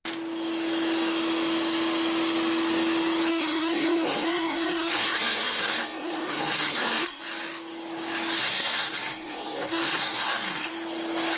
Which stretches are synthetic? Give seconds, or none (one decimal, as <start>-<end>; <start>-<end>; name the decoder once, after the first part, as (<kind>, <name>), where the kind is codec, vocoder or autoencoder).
3.3-7.2 (codec, SNAC); 8.4-10.7